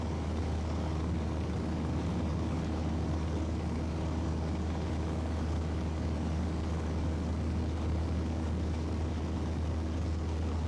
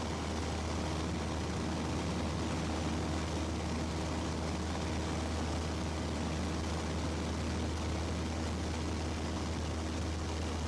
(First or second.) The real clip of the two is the second